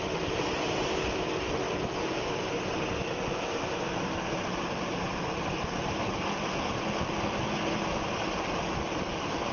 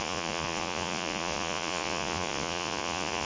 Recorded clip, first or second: first